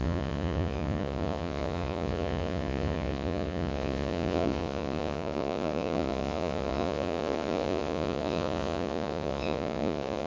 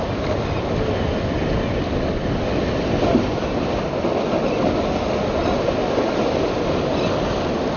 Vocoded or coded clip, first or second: first